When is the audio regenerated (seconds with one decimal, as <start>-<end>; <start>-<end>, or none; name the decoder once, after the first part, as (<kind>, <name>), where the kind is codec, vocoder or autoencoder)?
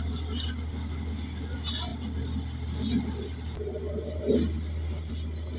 none